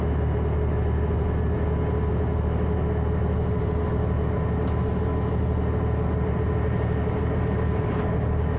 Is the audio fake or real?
real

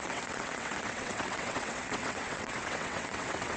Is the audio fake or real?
fake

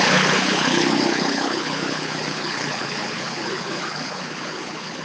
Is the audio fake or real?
fake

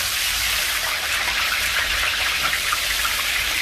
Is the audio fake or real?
fake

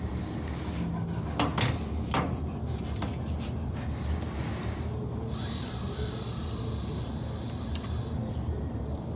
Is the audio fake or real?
real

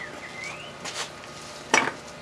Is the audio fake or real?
real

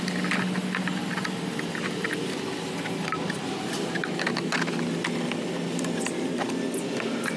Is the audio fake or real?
real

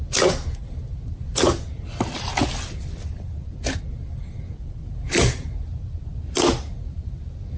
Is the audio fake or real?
real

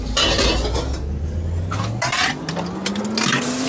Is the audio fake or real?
real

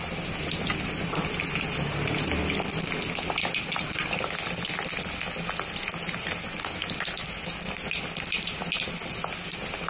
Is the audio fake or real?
real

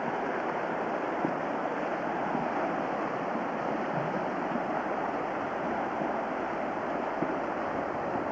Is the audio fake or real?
real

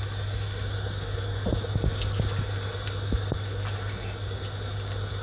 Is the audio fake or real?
real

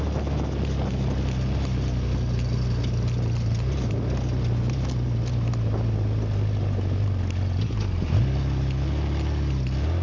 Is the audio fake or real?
real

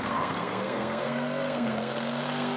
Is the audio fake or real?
fake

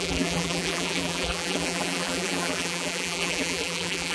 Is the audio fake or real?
fake